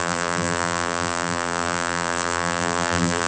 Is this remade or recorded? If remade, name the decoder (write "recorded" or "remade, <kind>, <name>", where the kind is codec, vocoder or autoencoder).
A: remade, vocoder, BigVGAN v2